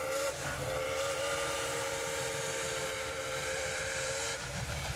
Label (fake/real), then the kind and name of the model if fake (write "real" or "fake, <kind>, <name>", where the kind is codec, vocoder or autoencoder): fake, vocoder, BigVGAN v2